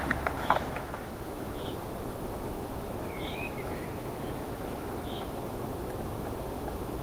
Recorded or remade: remade